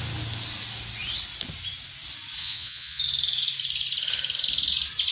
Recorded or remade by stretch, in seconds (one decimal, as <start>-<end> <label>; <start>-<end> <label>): 0.0-2.4 recorded; 2.4-3.0 remade; 3.0-5.1 recorded